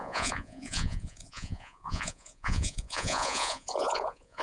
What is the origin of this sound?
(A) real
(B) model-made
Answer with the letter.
B